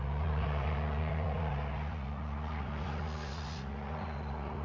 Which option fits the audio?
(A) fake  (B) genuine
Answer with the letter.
A